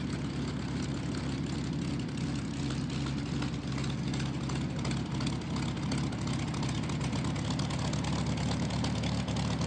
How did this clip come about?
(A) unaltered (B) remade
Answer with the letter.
A